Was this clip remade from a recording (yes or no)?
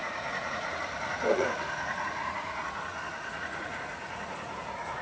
yes